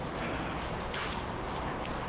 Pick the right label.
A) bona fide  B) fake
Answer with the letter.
A